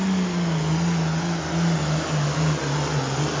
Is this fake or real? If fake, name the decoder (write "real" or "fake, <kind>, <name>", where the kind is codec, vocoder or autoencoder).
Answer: real